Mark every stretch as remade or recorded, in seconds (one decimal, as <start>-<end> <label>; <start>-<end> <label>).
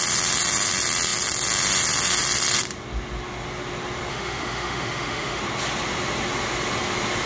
0.0-4.1 recorded; 4.1-5.4 remade; 5.4-7.3 recorded